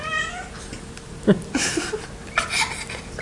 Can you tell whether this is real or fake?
real